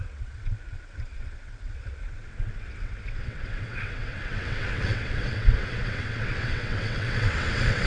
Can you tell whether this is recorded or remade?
remade